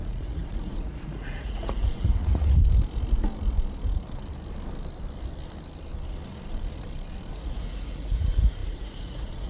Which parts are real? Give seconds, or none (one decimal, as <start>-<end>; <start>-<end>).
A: 2.6-7.3